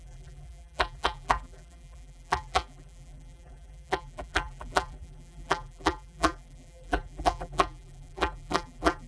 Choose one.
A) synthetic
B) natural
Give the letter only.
A